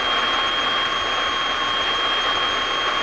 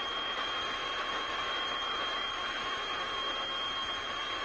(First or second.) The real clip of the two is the first